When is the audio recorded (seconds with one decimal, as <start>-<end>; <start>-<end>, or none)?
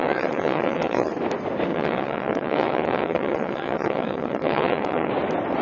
1.1-1.7; 5.1-5.6